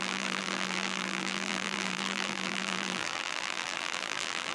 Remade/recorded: remade